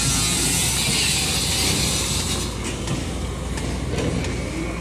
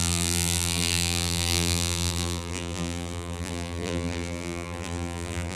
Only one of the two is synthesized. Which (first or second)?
second